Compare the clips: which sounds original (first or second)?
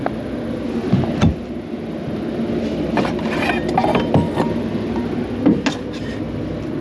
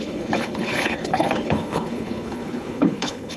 first